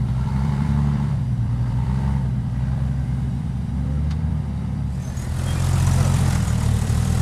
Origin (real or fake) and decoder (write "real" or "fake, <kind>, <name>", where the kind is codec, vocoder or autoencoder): fake, vocoder, BigVGAN v2